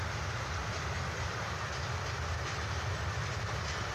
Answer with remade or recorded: recorded